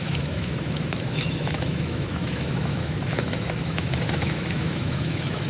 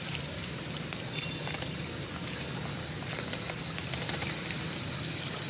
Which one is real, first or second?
second